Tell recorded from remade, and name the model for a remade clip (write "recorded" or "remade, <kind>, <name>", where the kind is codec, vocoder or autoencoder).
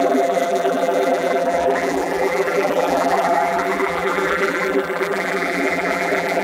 remade, vocoder, BigVGAN v2